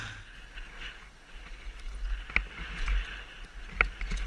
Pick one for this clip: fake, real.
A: real